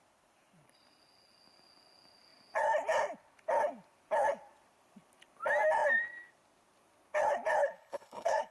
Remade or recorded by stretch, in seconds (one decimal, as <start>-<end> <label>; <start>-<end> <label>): 0.0-7.6 recorded; 7.6-8.5 remade